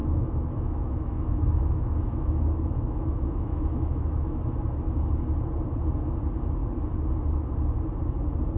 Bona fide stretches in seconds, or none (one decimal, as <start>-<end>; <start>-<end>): 4.4-8.6